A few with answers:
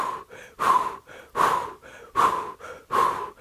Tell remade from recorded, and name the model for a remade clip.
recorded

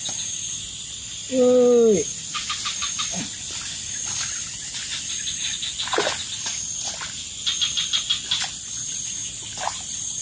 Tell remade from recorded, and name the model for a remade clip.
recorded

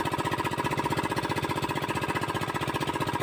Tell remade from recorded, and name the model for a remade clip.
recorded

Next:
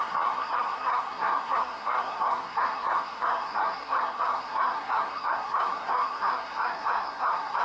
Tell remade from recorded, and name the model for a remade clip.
remade, codec, SNAC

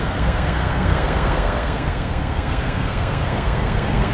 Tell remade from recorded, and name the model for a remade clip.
remade, codec, SNAC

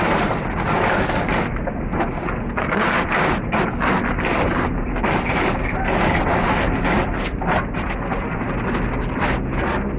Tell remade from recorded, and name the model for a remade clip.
recorded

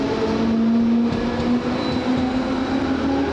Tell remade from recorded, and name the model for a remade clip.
recorded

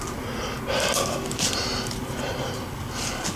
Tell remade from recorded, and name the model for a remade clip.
recorded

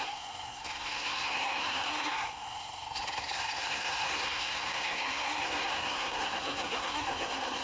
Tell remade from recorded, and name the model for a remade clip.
remade, codec, SNAC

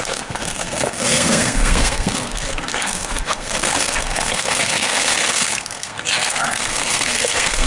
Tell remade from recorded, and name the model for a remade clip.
remade, codec, SNAC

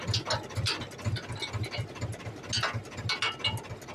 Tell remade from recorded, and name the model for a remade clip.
recorded